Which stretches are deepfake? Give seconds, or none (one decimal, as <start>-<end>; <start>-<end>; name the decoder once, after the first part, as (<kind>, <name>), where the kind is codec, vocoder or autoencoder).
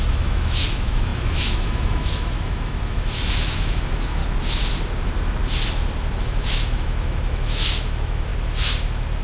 0.0-4.2 (autoencoder, DAC-VAE); 6.2-8.3